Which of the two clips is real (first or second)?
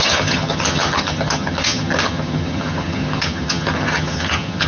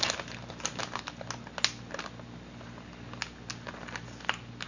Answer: second